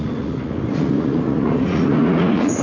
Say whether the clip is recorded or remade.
remade